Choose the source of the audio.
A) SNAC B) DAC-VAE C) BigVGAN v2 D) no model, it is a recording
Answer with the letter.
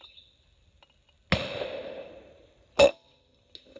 D